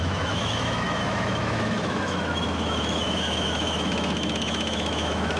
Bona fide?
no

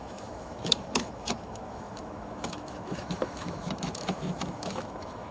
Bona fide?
no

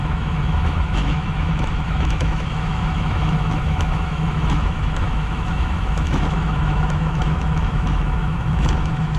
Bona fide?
no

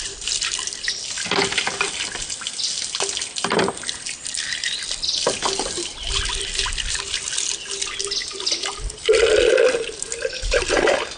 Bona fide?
yes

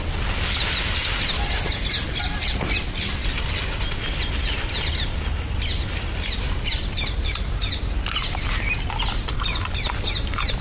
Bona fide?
yes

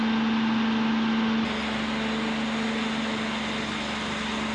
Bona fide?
yes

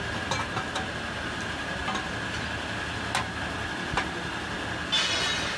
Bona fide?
yes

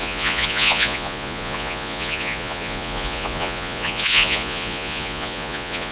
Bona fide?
no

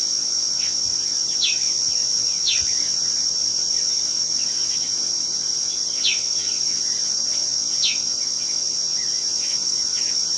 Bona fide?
no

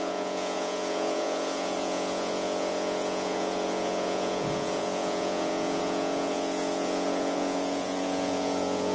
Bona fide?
no